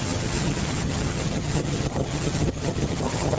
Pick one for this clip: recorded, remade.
remade